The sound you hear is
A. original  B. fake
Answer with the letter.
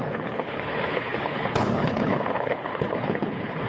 B